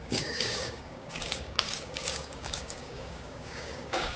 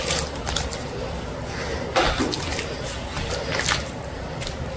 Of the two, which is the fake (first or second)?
first